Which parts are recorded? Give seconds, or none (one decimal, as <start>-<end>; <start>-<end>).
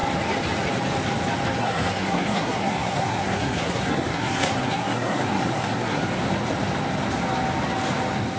0.0-1.6; 6.0-8.4